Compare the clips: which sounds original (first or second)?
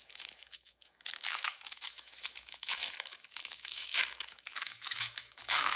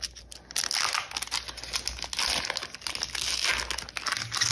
second